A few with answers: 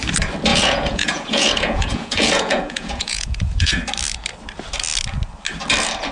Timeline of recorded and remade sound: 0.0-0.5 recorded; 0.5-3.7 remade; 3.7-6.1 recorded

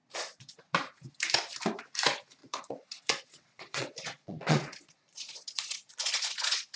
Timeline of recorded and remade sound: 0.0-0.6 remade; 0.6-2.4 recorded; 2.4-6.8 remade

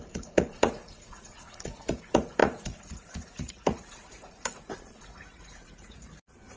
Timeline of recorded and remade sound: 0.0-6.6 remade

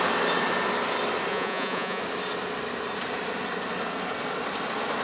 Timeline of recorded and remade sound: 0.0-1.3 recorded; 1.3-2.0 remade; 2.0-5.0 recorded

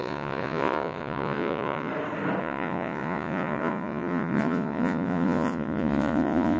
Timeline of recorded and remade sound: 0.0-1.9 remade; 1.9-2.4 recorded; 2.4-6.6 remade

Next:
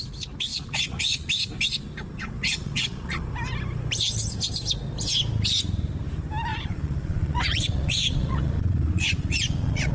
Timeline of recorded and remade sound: 0.0-0.5 recorded; 0.5-1.3 remade; 1.3-2.4 recorded; 2.4-3.2 remade; 3.2-6.5 recorded; 6.5-9.9 remade